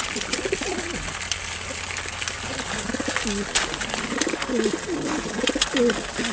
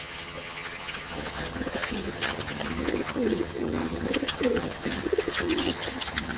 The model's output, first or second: second